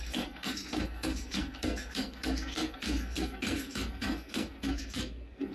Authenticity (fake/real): fake